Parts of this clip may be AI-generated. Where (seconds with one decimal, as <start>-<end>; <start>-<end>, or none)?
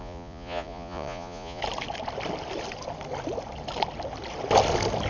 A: 0.0-1.6